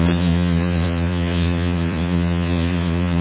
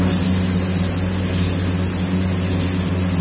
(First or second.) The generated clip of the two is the first